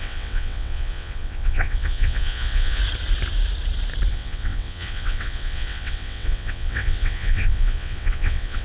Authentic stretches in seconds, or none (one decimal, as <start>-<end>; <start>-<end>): 2.8-4.1